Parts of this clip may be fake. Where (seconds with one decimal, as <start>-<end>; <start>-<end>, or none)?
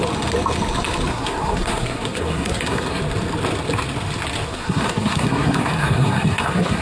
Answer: 1.1-3.0; 4.5-6.8